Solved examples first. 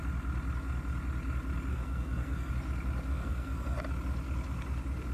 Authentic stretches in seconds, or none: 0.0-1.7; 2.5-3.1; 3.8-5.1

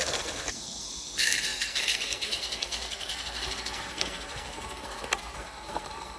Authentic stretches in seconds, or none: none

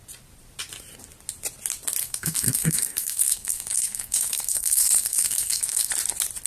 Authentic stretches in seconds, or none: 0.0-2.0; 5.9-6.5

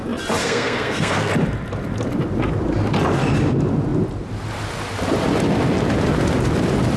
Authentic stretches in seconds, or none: 0.0-0.4; 1.3-7.0